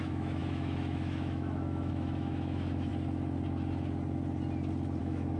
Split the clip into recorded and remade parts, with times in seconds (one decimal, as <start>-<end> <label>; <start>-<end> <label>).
0.0-2.9 remade; 2.9-5.0 recorded; 5.0-5.4 remade

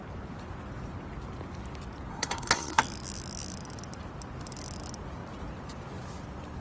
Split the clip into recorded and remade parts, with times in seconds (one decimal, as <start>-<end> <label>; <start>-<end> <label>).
0.0-2.1 recorded; 2.1-2.8 remade; 2.8-6.6 recorded